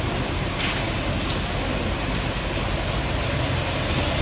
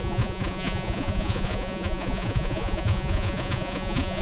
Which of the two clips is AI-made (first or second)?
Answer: second